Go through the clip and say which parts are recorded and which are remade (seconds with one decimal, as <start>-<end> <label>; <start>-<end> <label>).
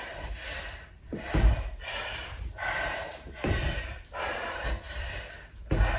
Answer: 0.0-1.1 recorded; 1.1-4.7 remade; 4.7-6.0 recorded